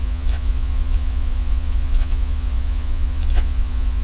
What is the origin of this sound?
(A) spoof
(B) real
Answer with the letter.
A